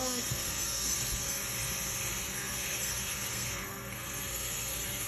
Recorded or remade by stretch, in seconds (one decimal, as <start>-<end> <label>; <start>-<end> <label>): 0.0-1.4 remade; 1.4-2.1 recorded; 2.1-5.1 remade